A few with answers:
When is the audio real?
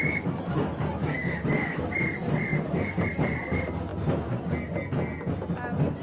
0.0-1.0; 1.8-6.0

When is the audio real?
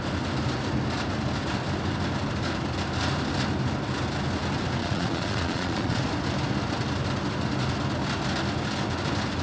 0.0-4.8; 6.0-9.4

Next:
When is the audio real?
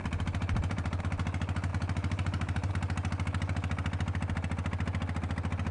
1.0-1.7; 2.7-5.7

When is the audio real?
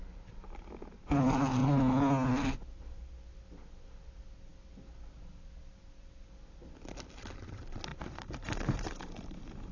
0.0-7.9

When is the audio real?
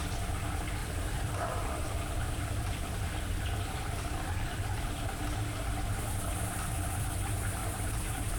0.0-0.8; 5.2-7.6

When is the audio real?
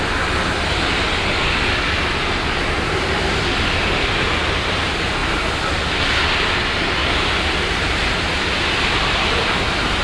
0.0-10.0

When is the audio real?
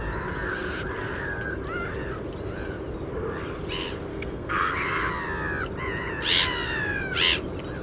0.0-4.1; 4.7-7.8